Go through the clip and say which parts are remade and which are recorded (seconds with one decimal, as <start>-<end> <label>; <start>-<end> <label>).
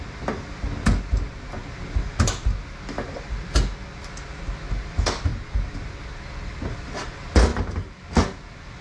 0.0-8.8 recorded